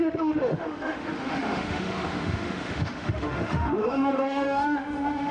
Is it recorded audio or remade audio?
remade